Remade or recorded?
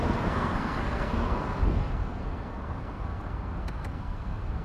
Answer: remade